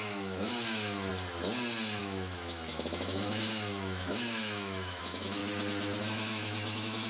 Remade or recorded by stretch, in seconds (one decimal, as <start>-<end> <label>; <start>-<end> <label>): 0.0-1.1 remade; 1.1-2.0 recorded; 2.0-5.4 remade; 5.4-6.0 recorded; 6.0-7.1 remade